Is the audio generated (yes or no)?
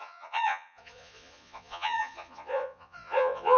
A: yes